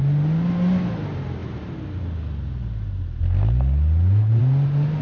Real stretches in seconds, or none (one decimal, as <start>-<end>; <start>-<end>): 0.0-5.0